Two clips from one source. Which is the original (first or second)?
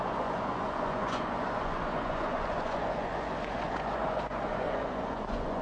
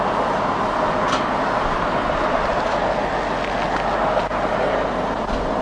second